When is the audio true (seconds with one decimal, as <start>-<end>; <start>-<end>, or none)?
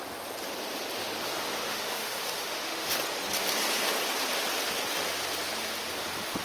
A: 0.0-1.7; 3.0-6.4